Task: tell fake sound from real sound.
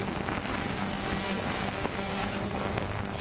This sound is fake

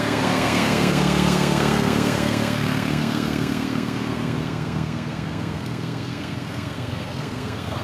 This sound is fake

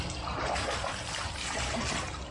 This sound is real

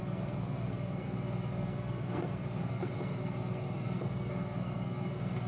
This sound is fake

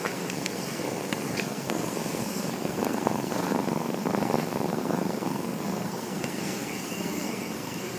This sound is fake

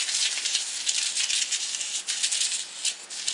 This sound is real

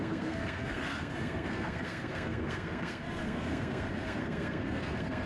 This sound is fake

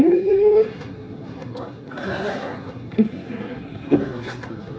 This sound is fake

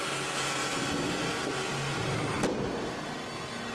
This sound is real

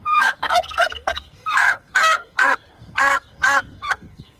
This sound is fake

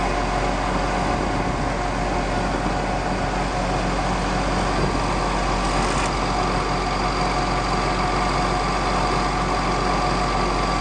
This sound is real